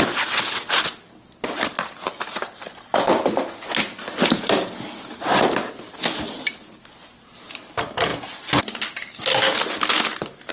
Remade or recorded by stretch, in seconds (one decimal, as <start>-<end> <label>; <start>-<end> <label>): 0.0-10.5 recorded